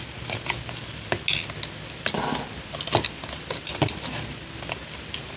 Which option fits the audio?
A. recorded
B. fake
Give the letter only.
A